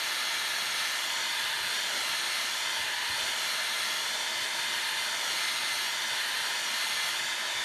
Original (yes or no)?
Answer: yes